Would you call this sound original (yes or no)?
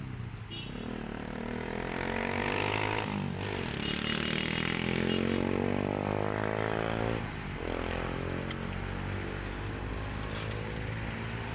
yes